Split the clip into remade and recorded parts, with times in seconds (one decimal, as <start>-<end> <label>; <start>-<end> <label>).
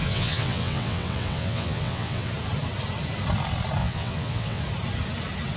0.0-2.3 remade; 2.3-3.8 recorded; 3.8-4.6 remade; 4.6-5.6 recorded